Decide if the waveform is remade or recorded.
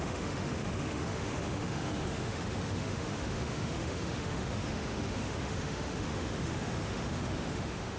remade